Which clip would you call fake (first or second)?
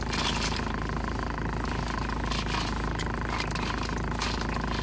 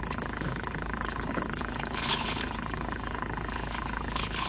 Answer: second